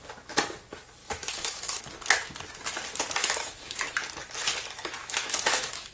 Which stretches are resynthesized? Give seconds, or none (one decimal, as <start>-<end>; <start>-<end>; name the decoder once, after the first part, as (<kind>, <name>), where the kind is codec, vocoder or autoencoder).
1.0-1.8 (autoencoder, DAC-VAE); 3.2-3.9; 5.0-5.9